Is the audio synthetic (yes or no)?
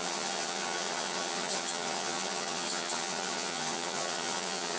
yes